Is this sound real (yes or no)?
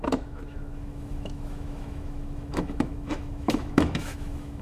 no